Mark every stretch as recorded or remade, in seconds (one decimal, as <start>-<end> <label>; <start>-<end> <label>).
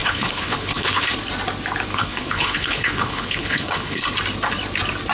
0.0-1.1 remade; 1.1-1.9 recorded; 1.9-4.0 remade; 4.0-5.1 recorded